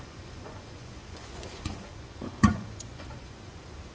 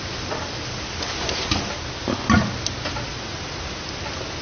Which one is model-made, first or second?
first